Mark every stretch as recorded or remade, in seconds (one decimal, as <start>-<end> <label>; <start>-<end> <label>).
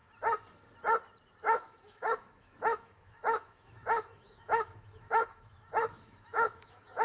0.0-1.4 recorded; 1.4-7.0 remade